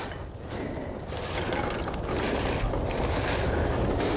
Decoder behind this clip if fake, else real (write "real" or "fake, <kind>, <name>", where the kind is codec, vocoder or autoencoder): real